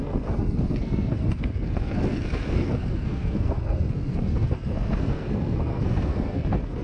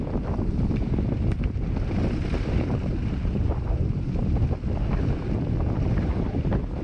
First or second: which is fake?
first